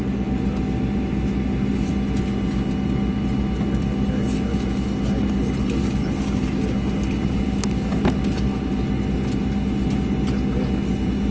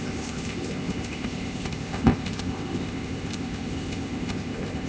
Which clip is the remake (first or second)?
second